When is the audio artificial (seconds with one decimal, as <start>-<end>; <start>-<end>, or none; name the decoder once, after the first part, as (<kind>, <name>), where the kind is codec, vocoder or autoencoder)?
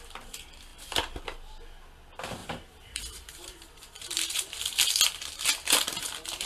2.4-4.9 (vocoder, BigVGAN v2)